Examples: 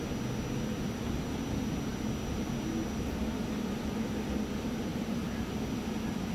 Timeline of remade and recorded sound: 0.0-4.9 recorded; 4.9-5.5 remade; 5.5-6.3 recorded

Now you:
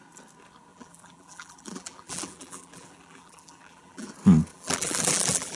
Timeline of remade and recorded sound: 0.0-0.7 recorded; 0.7-4.1 remade; 4.1-4.5 recorded; 4.5-5.6 remade